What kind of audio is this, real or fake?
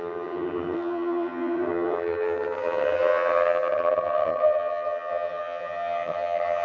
fake